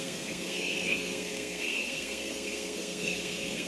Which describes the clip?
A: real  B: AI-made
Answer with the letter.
B